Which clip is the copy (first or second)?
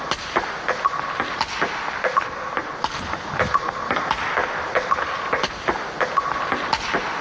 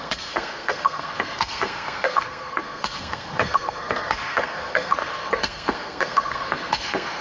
second